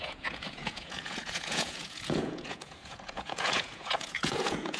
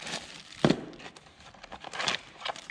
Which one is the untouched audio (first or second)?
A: second